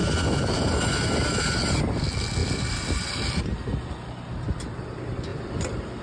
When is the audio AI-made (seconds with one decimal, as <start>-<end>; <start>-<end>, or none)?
0.0-1.1; 2.4-3.4; 5.3-6.0